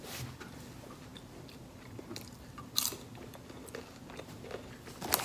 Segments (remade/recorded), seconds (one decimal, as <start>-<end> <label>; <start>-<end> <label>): 0.0-5.2 recorded